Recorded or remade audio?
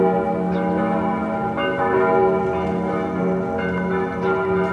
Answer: recorded